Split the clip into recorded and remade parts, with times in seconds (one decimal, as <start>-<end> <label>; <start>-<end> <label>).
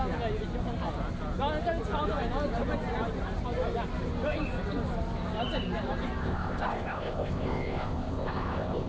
0.0-6.2 recorded; 6.2-8.9 remade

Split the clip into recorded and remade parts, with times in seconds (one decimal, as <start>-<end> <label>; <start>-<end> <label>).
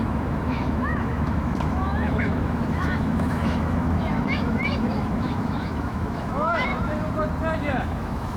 0.0-6.7 remade; 6.7-7.6 recorded; 7.6-8.4 remade